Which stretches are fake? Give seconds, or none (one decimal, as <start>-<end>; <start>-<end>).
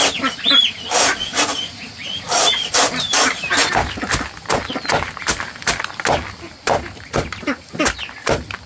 none